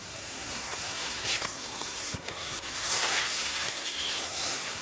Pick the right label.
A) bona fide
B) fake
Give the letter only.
B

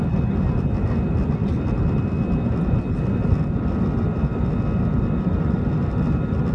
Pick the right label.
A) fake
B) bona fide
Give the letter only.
B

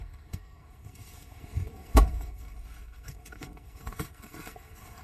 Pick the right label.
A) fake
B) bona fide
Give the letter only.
A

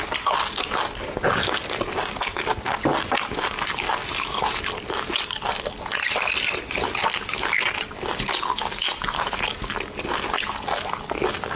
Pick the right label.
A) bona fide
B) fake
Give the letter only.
A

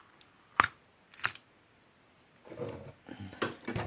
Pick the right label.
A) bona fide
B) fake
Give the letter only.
A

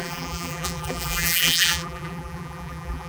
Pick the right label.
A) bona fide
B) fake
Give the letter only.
B